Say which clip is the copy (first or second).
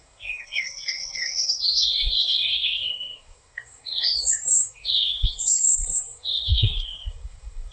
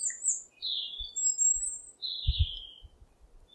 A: first